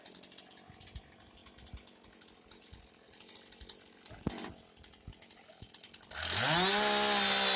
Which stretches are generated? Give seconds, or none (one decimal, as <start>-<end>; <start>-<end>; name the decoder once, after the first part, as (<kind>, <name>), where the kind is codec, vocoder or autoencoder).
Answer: none